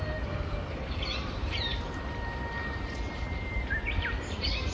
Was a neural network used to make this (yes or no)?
yes